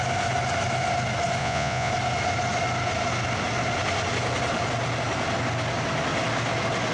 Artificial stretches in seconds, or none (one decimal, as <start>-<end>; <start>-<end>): 1.4-1.9